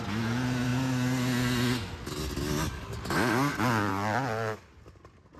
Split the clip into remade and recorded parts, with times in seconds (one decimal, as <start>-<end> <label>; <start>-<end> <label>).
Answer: 0.0-5.4 recorded

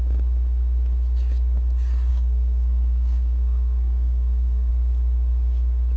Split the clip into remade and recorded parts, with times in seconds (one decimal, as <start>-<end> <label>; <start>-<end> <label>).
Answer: 0.0-2.1 recorded; 2.1-4.7 remade; 4.7-6.0 recorded

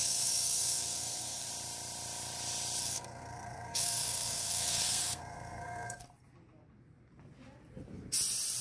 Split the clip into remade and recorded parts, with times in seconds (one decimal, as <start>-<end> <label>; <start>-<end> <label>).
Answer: 0.0-1.5 remade; 1.5-2.8 recorded; 2.8-6.0 remade; 6.0-8.6 recorded

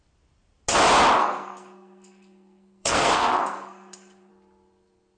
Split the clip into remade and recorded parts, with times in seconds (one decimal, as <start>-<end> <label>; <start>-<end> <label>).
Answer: 0.0-1.2 recorded; 1.2-4.3 remade; 4.3-5.2 recorded

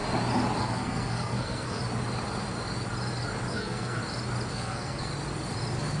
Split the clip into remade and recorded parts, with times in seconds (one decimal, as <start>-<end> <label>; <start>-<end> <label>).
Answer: 0.0-0.6 recorded; 0.6-1.8 remade; 1.8-3.5 recorded; 3.5-4.0 remade; 4.0-4.5 recorded; 4.5-5.1 remade; 5.1-6.0 recorded